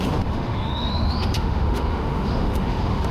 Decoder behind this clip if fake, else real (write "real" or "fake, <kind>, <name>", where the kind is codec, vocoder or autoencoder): fake, autoencoder, DAC-VAE